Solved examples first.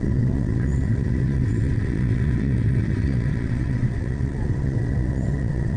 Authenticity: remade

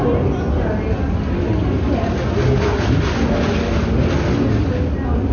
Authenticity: recorded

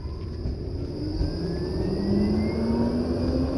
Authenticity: recorded